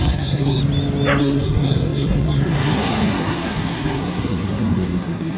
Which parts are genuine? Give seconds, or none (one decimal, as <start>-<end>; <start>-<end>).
0.6-1.2

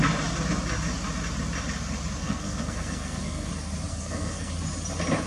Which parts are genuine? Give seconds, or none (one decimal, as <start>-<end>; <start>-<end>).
0.0-2.2; 3.5-3.9; 4.5-5.3

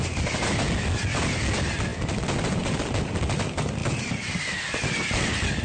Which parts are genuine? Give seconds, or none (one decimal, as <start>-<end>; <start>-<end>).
0.0-5.6

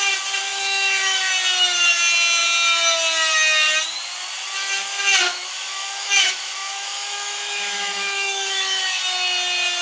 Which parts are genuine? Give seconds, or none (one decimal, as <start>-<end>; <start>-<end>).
0.0-0.5; 1.3-5.3; 9.0-9.8

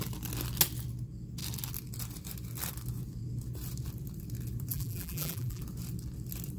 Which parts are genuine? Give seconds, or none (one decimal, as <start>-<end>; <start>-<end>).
0.0-4.7; 5.6-6.6

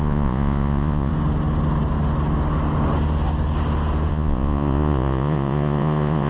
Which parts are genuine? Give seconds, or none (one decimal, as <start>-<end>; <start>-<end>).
1.1-4.1

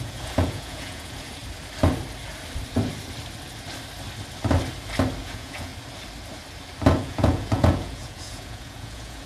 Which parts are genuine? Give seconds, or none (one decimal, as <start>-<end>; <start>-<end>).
1.4-5.2; 5.7-7.0

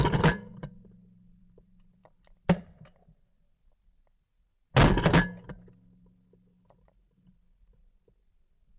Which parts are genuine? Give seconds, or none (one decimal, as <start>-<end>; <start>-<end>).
0.0-8.8